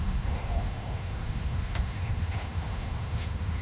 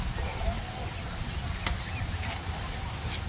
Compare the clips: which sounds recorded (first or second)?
second